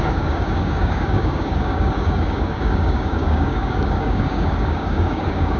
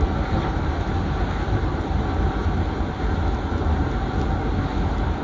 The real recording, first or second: second